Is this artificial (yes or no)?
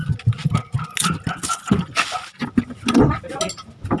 no